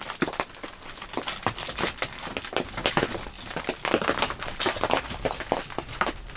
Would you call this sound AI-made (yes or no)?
no